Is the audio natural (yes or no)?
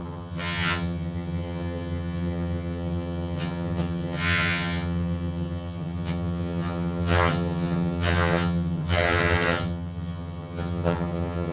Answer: no